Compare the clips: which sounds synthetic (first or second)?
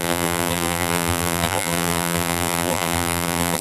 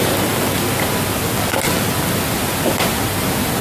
first